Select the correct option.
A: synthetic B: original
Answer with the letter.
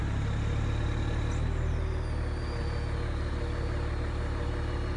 B